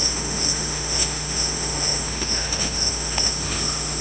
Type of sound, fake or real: fake